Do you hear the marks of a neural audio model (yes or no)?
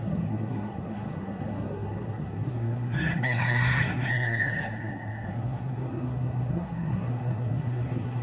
yes